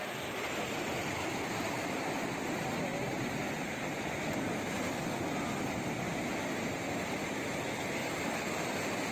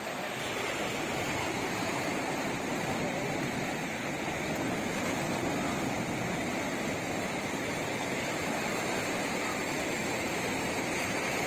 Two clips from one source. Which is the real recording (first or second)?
first